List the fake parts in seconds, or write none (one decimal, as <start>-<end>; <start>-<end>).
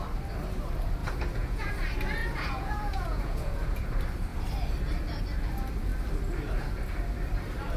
1.0-1.7; 2.2-3.9